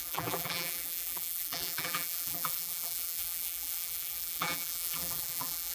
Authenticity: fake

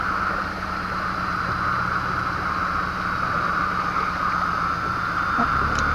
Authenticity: real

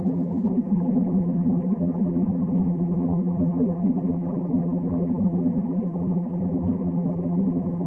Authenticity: fake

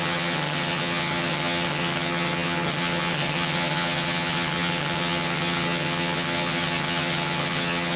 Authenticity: fake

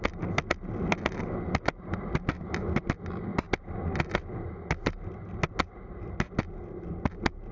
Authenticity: real